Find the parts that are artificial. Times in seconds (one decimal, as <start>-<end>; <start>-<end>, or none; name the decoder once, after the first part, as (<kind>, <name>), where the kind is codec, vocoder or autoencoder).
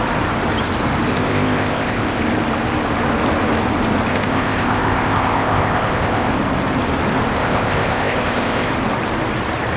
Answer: 1.1-2.2 (codec, ZipCodec); 4.1-6.3; 7.4-8.7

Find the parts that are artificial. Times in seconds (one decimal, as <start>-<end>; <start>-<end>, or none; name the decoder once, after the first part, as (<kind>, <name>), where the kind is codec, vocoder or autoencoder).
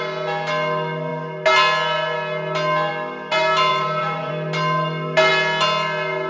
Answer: 3.7-4.3 (vocoder, BigVGAN v2)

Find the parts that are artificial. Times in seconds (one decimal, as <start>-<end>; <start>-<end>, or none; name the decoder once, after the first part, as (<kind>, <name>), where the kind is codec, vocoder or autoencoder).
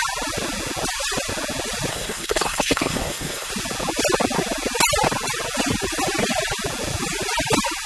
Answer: 1.9-3.5 (codec, SNAC)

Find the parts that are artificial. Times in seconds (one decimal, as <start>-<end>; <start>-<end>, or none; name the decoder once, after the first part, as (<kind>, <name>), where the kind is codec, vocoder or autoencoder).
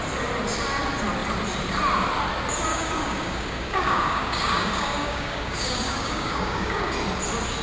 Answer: 2.7-6.9 (codec, DAC)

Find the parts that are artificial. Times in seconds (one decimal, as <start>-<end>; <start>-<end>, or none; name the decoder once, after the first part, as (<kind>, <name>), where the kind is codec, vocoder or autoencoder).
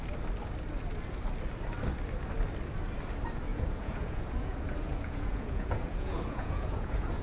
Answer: 3.5-7.2 (vocoder, Vocos)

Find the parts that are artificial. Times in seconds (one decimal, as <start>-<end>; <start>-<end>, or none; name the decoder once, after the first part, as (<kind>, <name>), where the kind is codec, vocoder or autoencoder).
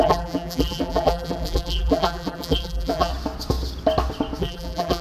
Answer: 0.0-3.1 (vocoder, BigVGAN v2); 4.4-5.0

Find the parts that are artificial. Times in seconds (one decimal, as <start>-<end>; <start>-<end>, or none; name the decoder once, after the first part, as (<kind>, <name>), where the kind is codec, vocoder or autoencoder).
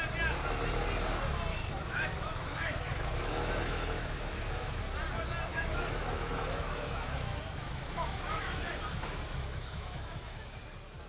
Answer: 1.5-4.8 (autoencoder, DAC-VAE); 5.5-10.6